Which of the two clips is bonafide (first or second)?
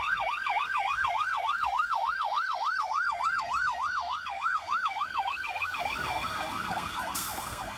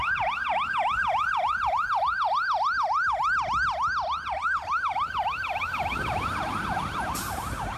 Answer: second